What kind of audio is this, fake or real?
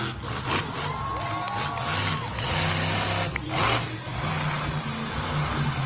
real